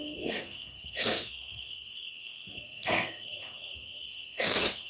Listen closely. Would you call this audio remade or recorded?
remade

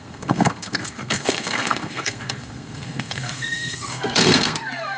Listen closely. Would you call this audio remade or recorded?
remade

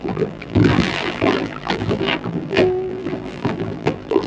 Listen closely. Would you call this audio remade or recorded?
remade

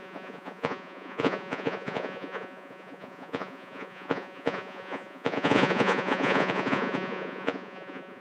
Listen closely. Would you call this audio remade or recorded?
remade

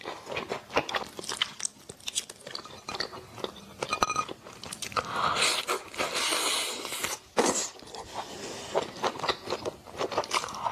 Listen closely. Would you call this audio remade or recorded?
recorded